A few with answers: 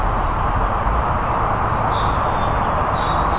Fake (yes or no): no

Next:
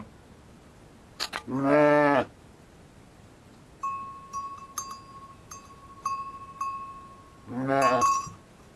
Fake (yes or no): no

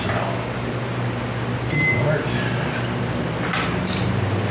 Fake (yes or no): no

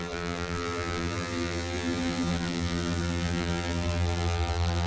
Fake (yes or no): yes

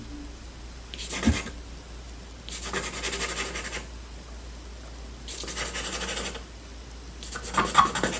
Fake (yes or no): no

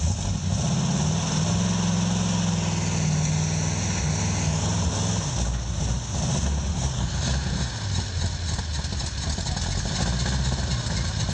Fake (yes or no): no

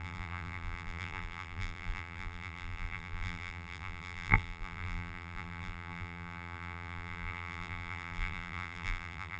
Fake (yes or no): yes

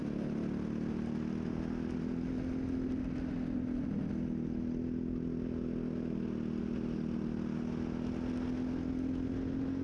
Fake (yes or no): no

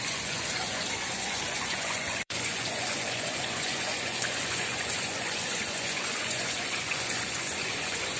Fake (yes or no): yes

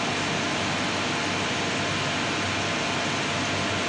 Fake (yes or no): no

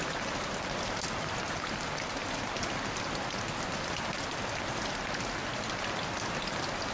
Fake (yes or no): no